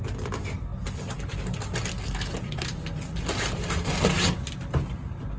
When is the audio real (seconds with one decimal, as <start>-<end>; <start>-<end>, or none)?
0.0-5.4